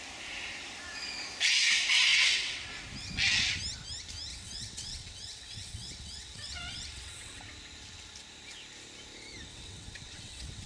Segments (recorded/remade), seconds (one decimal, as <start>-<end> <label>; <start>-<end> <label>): 0.0-2.1 recorded; 2.1-2.7 remade; 2.7-4.3 recorded; 4.3-7.4 remade; 7.4-9.5 recorded; 9.5-10.7 remade